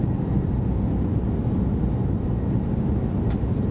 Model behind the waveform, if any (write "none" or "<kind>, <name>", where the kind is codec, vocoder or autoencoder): none